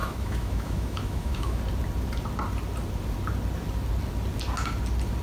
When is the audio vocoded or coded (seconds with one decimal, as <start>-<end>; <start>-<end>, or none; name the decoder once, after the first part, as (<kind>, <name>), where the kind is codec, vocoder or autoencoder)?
0.0-1.6 (autoencoder, DAC-VAE)